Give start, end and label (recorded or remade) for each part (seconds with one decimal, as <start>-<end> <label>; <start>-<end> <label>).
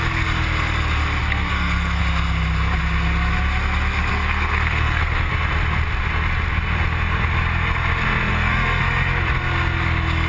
0.0-1.2 recorded; 1.2-2.0 remade; 2.0-4.1 recorded; 4.1-5.3 remade; 5.3-8.3 recorded; 8.3-8.8 remade; 8.8-10.3 recorded